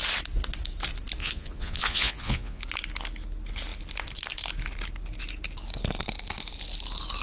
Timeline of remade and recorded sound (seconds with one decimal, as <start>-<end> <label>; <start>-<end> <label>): 0.0-1.2 recorded; 1.2-2.6 remade; 2.6-7.2 recorded